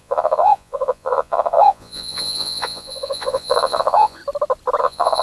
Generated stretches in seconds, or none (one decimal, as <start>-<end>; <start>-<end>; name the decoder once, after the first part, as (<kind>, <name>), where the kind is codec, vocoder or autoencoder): 0.0-4.2 (vocoder, Vocos); 4.8-5.2